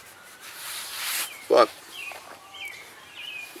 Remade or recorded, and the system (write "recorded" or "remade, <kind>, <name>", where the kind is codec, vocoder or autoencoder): remade, vocoder, BigVGAN v2